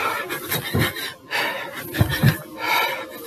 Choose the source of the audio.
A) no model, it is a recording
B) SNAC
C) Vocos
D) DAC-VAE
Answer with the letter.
A